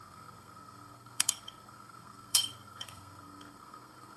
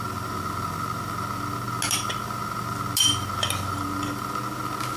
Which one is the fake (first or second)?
first